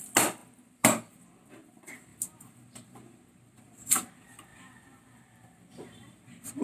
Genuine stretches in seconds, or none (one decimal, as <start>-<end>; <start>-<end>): 0.4-1.2

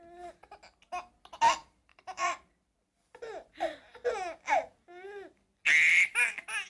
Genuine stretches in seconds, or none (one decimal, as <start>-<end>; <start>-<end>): 0.0-1.6; 5.6-6.7